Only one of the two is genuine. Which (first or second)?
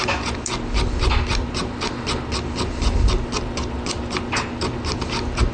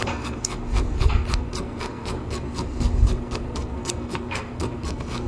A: first